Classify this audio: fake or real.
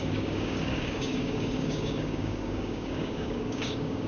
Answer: fake